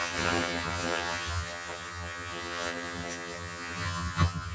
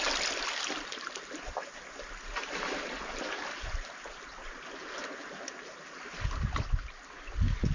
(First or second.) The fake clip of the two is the first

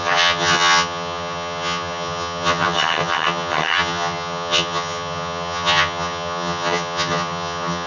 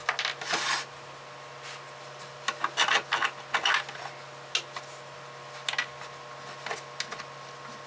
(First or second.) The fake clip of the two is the first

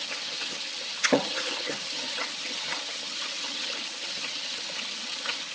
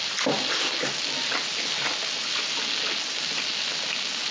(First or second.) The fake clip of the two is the first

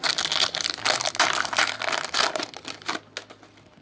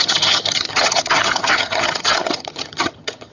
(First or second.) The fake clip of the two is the second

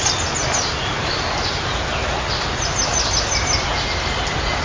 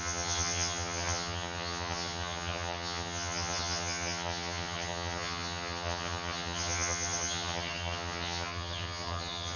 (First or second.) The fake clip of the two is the second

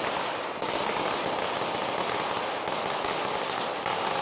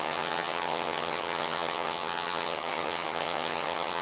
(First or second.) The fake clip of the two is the second